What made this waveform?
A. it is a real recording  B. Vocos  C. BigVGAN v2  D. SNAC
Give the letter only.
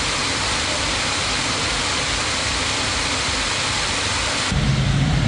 A